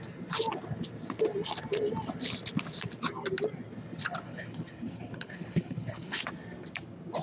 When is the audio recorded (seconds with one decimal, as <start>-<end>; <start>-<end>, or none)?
0.0-4.0; 6.2-7.2